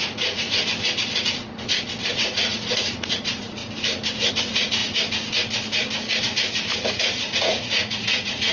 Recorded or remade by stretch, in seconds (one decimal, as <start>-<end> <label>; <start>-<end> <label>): 0.0-0.6 remade; 0.6-2.1 recorded; 2.1-3.6 remade; 3.6-4.3 recorded; 4.3-4.8 remade; 4.8-6.9 recorded; 6.9-8.5 remade